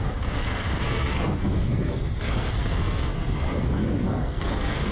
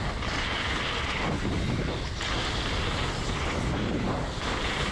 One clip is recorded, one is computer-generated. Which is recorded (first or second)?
second